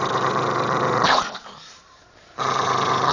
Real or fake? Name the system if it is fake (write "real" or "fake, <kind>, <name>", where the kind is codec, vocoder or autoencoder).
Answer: fake, vocoder, BigVGAN v2